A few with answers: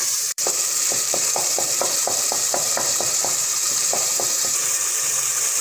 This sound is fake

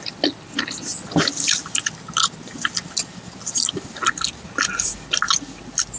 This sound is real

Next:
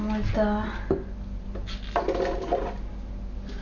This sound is real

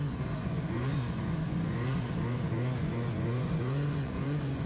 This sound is fake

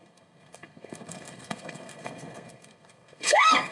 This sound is fake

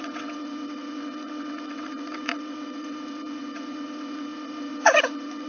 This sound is fake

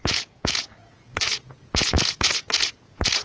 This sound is fake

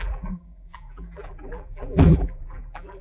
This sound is fake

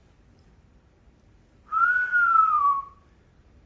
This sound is fake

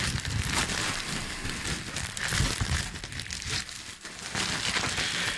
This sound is real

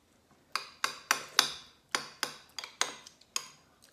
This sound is real